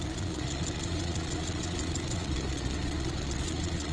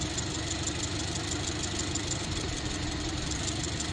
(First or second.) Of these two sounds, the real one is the second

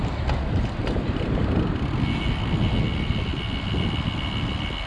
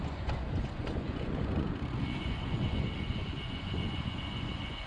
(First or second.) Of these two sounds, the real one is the first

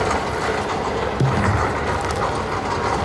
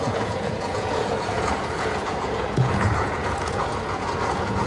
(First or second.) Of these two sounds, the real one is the first